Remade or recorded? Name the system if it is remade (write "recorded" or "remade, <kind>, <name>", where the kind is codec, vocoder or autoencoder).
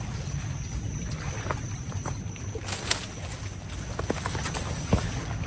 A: recorded